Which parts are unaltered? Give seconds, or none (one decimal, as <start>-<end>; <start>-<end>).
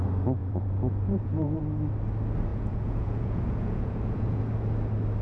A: 0.0-0.4; 1.6-2.5; 4.4-5.2